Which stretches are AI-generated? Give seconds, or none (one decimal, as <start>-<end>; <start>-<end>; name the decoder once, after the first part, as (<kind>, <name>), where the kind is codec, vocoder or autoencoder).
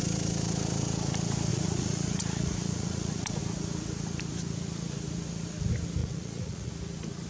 1.5-3.4 (vocoder, Vocos); 6.0-6.7